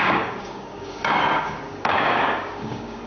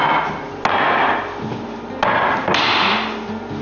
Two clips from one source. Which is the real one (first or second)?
second